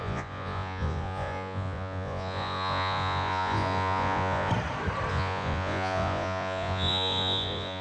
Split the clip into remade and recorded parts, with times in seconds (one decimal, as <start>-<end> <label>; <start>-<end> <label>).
0.0-4.5 remade; 4.5-5.1 recorded; 5.1-7.8 remade